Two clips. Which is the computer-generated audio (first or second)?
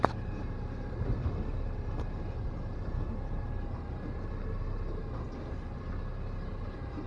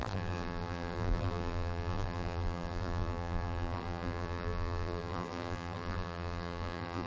second